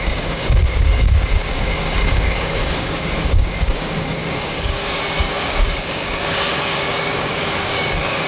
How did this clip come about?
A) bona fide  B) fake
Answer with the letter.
B